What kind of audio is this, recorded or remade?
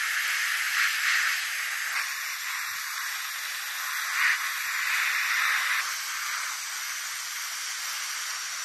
recorded